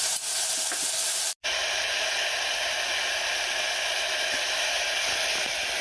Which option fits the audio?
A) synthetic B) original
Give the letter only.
B